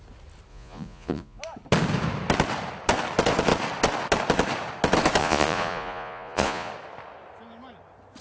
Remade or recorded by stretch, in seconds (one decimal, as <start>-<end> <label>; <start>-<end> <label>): 0.0-0.5 recorded; 0.5-1.4 remade; 1.4-5.2 recorded; 5.2-6.7 remade; 6.7-8.2 recorded